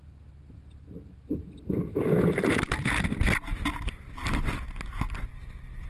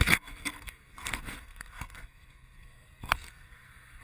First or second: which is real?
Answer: first